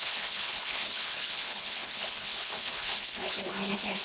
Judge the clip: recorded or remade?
remade